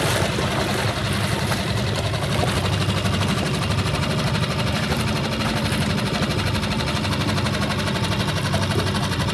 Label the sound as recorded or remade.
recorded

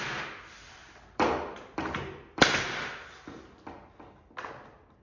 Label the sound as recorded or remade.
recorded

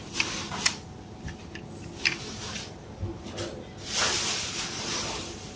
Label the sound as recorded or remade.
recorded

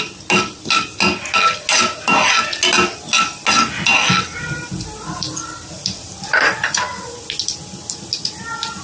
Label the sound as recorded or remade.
recorded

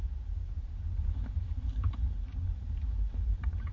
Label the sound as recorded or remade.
remade